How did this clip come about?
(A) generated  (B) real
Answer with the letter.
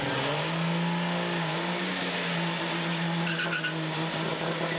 B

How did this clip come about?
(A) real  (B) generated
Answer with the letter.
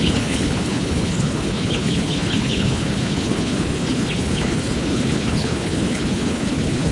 B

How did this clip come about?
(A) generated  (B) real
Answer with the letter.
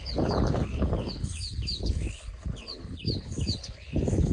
A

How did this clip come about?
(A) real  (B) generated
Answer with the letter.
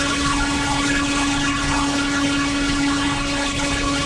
B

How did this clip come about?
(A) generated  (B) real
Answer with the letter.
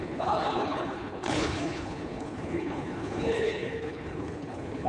A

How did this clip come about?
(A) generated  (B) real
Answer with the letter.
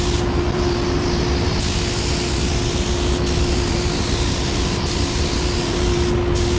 B